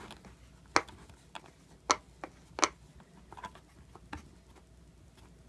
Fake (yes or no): no